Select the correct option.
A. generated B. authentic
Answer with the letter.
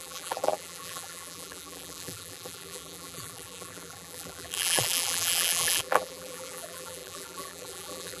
A